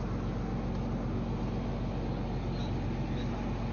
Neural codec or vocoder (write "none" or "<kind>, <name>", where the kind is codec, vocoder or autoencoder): none